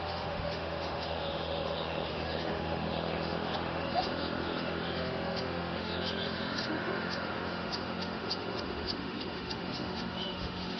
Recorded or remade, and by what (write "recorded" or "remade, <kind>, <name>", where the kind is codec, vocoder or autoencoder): remade, autoencoder, DAC-VAE